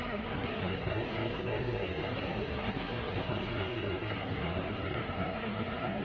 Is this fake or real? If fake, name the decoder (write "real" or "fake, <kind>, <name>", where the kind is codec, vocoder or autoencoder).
fake, codec, SNAC